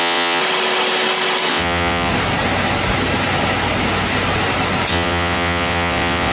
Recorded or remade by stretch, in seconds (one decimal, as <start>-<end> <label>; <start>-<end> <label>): 0.0-0.4 remade; 0.4-1.5 recorded; 1.5-2.1 remade; 2.1-4.9 recorded; 4.9-6.3 remade